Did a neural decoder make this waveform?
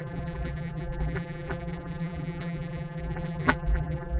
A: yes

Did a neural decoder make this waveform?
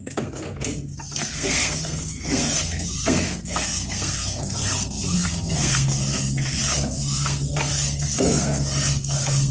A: yes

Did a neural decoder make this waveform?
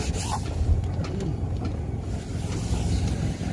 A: no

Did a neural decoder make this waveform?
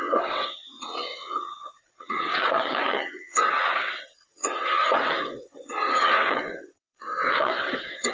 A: yes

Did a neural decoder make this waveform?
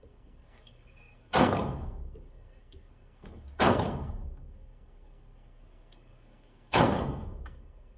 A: yes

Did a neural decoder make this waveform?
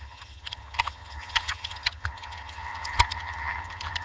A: yes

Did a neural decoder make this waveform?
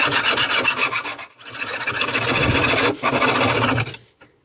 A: no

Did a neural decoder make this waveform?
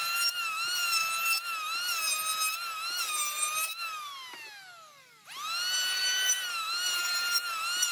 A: no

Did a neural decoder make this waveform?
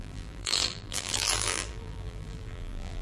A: yes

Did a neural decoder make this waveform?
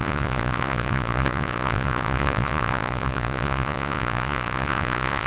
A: yes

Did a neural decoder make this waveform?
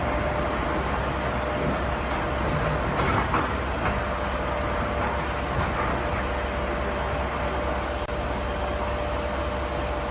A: no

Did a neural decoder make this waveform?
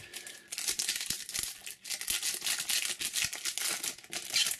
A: no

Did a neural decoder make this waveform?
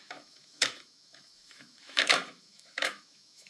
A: yes